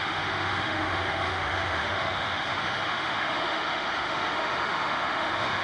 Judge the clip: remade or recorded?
remade